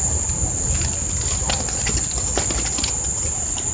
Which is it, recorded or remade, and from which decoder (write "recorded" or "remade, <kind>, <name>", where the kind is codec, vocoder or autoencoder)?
recorded